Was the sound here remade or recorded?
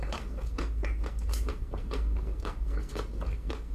remade